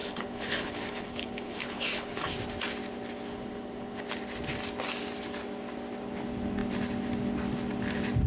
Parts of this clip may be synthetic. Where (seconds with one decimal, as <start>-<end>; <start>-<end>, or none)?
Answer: 0.0-2.3; 3.3-4.0